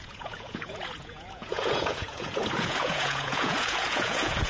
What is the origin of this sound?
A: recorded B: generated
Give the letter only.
B